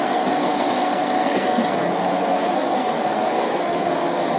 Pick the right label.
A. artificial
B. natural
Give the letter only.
A